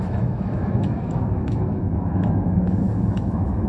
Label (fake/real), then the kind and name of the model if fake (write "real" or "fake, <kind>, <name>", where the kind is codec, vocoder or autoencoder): fake, autoencoder, DAC-VAE